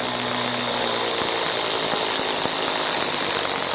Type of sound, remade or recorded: recorded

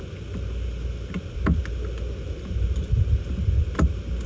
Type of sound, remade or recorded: recorded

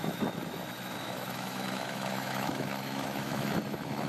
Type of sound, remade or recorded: remade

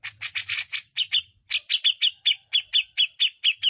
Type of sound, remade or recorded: recorded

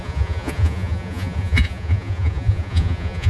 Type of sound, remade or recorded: remade